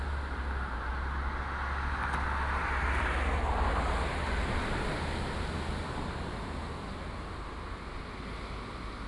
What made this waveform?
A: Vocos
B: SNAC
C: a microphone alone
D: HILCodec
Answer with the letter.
C